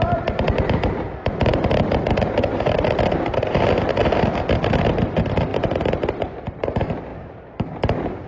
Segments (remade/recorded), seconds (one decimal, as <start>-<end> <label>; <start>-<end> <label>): 0.0-5.5 recorded; 5.5-6.5 remade; 6.5-7.1 recorded; 7.1-8.3 remade